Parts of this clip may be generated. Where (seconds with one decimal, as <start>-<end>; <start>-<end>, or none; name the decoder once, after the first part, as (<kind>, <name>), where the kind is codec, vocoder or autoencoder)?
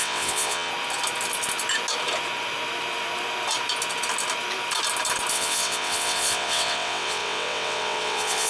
0.0-0.7 (vocoder, WaveNeXt); 5.3-8.5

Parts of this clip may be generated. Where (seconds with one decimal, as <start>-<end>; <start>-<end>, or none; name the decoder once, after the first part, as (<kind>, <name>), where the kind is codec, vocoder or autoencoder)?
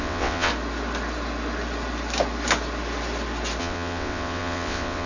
0.0-0.5 (vocoder, WaveNeXt); 3.6-5.1